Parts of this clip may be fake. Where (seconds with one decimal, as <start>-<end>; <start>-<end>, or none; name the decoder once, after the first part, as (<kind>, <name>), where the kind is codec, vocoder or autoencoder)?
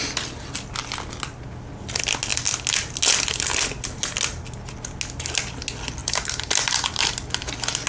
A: 6.0-7.3 (vocoder, BigVGAN v2)